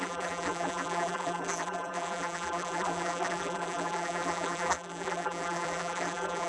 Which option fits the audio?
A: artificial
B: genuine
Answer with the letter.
A